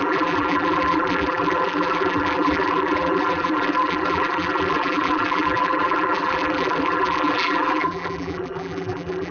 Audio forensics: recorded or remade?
remade